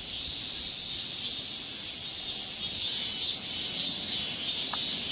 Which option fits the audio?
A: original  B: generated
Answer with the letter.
A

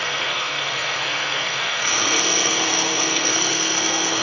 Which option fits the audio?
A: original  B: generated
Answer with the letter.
B